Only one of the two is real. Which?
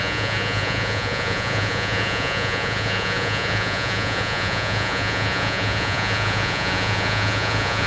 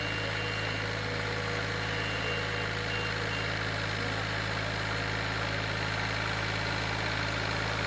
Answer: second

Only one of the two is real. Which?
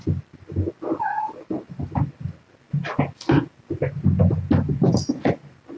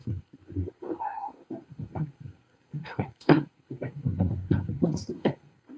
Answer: first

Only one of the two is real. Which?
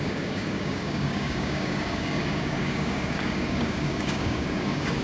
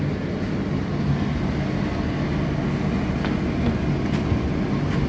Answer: second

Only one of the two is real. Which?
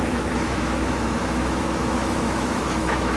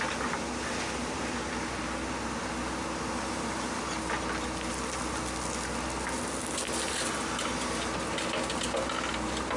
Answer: second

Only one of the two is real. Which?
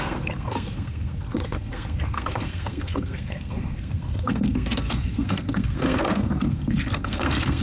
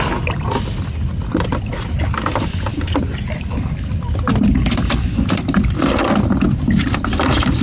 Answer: second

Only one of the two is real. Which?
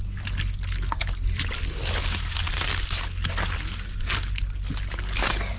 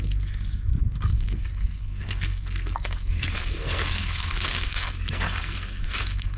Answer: first